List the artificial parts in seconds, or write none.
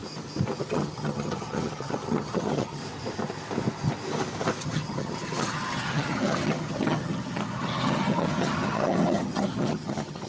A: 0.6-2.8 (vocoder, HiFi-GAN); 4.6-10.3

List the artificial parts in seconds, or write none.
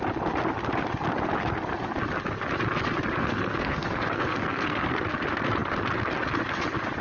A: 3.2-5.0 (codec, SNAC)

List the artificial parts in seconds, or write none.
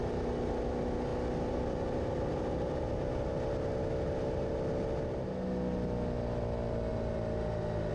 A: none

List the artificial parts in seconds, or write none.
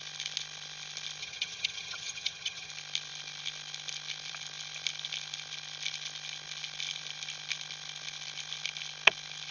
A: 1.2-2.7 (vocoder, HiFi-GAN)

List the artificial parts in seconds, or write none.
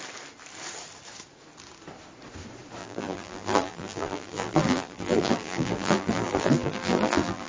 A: 2.8-7.5 (vocoder, BigVGAN v2)